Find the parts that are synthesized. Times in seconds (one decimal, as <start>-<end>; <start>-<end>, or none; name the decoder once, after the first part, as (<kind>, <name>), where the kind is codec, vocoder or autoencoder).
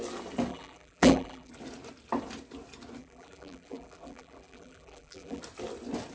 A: 0.5-1.5 (vocoder, BigVGAN v2); 3.0-5.4